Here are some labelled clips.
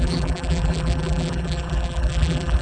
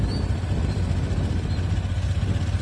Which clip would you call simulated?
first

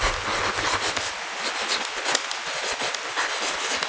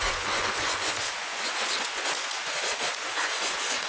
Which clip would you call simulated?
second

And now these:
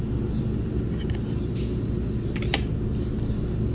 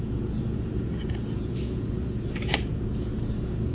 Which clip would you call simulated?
second